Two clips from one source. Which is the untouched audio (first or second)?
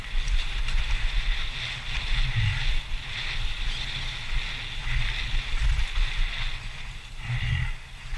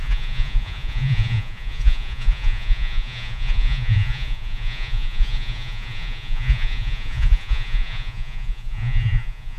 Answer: first